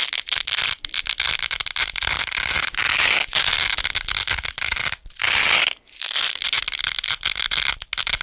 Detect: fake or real real